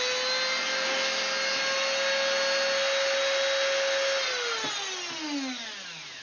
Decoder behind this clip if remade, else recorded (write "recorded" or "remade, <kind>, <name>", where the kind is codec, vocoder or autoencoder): recorded